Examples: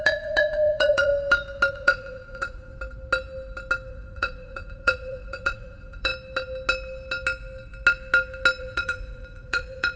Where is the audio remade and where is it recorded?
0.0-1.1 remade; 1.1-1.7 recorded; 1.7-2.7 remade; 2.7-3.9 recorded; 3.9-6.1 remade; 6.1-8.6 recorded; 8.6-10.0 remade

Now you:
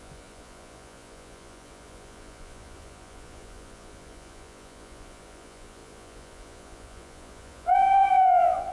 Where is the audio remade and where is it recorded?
0.0-8.7 remade

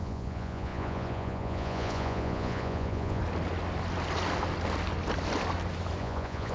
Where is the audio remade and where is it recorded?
0.0-3.2 remade; 3.2-6.0 recorded; 6.0-6.5 remade

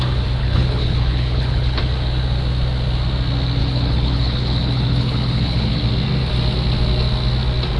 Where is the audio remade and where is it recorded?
0.0-0.4 recorded; 0.4-1.8 remade; 1.8-3.6 recorded; 3.6-5.8 remade; 5.8-7.8 recorded

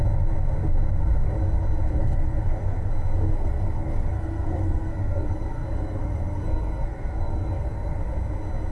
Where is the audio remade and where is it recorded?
0.0-2.0 recorded; 2.0-2.9 remade; 2.9-3.3 recorded; 3.3-8.0 remade; 8.0-8.7 recorded

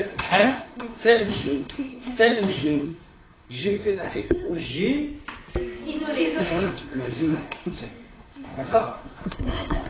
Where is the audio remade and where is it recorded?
0.0-4.7 remade; 4.7-6.4 recorded; 6.4-9.9 remade

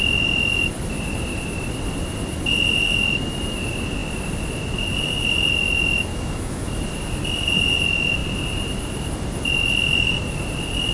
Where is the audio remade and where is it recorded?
0.0-6.1 recorded; 6.1-6.8 remade; 6.8-10.9 recorded